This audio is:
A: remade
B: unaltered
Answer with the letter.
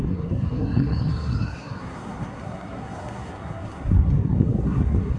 A